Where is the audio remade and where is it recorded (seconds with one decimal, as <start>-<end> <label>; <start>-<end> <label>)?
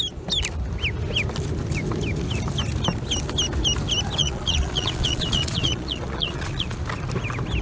0.0-4.2 recorded; 4.2-6.8 remade; 6.8-7.6 recorded